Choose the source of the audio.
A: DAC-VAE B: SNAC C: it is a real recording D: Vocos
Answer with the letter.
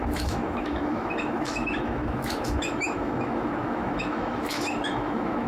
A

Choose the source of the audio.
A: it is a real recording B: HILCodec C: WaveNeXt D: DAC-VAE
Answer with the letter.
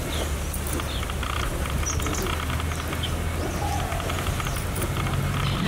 A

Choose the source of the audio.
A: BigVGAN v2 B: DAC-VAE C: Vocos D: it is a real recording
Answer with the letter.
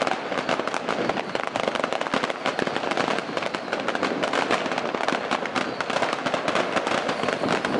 D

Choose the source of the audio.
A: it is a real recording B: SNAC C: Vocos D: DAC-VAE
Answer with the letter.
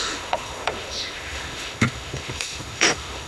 D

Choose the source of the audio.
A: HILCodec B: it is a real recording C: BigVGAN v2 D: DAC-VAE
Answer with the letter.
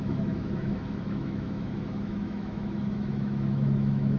D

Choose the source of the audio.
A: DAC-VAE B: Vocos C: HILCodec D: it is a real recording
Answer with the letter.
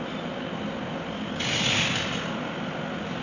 D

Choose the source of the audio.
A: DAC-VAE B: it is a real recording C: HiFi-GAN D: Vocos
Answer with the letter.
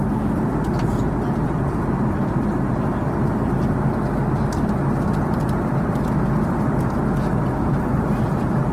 B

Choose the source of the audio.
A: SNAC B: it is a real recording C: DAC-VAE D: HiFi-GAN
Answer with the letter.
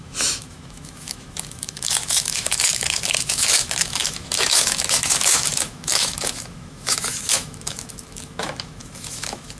C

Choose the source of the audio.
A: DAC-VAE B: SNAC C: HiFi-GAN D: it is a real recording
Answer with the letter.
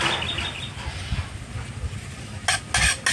D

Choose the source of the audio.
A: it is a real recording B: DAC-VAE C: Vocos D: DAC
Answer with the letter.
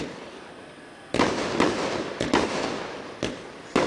A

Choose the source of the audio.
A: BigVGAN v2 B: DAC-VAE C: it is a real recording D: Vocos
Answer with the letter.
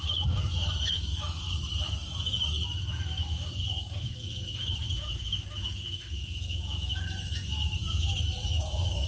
B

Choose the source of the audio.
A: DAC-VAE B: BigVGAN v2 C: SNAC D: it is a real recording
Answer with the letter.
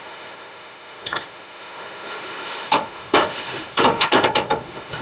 A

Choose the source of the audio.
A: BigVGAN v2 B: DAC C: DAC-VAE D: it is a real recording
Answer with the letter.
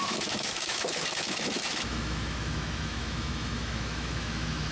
C